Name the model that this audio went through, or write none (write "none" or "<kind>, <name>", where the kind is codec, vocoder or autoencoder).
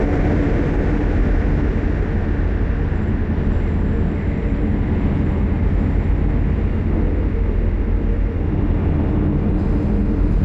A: none